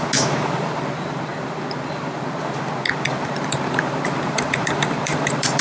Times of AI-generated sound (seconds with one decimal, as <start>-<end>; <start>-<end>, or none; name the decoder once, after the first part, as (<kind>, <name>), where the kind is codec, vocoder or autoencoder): 3.1-5.6 (vocoder, BigVGAN v2)